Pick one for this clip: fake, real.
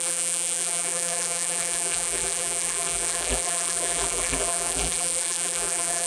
fake